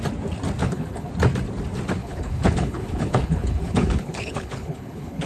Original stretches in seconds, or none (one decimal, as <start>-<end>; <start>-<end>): 0.0-0.6; 1.1-2.0

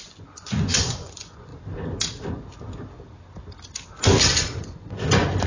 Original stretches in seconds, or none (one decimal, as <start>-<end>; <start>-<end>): 1.5-4.2

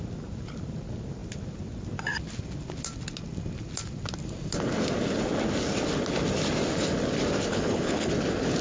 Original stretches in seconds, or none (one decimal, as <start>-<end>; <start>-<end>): 0.0-7.5; 8.1-8.6

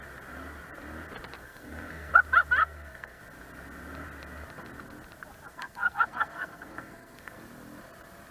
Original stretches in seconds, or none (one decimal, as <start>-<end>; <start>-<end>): 0.0-1.4; 2.1-2.6; 3.2-5.5; 7.4-8.3

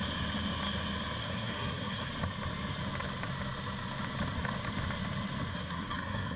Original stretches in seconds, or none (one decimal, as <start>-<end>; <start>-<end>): 0.0-1.2; 2.1-5.5

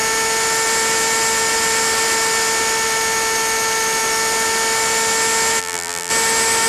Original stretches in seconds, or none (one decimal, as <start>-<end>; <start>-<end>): 0.0-5.6; 6.1-6.7

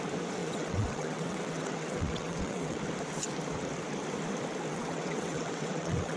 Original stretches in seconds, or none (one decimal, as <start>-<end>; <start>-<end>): 0.0-0.4; 2.8-4.7

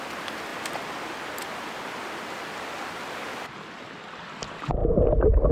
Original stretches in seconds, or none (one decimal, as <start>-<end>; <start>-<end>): 0.0-4.8